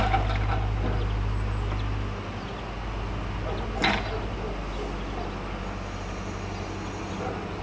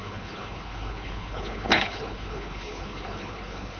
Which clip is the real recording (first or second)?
first